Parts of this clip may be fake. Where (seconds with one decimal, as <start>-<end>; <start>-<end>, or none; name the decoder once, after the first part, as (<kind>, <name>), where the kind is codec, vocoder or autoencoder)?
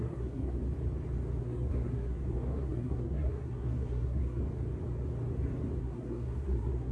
0.0-0.6 (codec, SNAC); 1.4-4.4; 5.8-6.9